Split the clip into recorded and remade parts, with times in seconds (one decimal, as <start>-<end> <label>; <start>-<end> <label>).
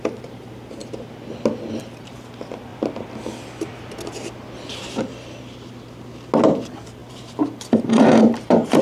0.0-0.8 remade; 0.8-1.8 recorded; 1.8-2.7 remade; 2.7-6.4 recorded; 6.4-8.8 remade